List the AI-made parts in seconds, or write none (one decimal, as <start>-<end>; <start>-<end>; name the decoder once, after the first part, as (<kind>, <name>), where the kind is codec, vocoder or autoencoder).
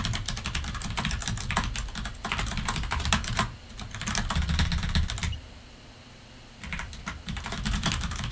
0.0-1.2 (vocoder, BigVGAN v2); 2.2-8.3